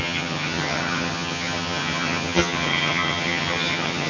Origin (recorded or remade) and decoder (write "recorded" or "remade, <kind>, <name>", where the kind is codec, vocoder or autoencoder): remade, vocoder, HiFi-GAN